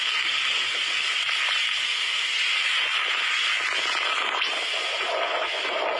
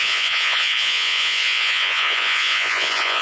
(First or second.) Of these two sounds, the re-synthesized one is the second